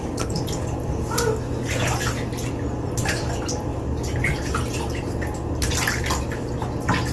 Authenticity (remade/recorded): recorded